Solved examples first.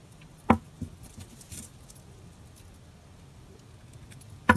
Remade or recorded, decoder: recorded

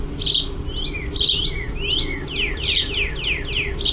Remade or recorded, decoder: recorded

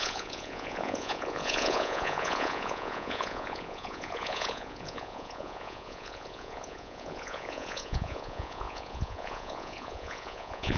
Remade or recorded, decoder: remade, vocoder, Vocos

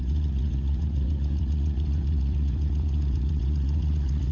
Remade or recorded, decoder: remade, vocoder, Vocos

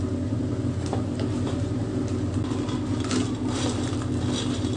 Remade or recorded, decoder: recorded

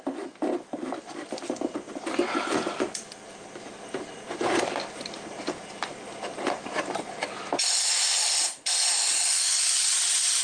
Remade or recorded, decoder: recorded